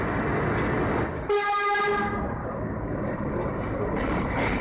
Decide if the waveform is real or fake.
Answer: real